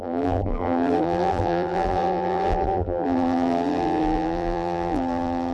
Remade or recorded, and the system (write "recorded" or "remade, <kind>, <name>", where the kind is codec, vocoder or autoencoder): remade, vocoder, BigVGAN v2